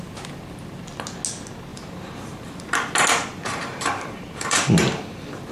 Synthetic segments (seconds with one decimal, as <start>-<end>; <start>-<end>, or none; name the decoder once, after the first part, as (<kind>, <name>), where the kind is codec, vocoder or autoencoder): 1.7-5.0 (vocoder, BigVGAN v2)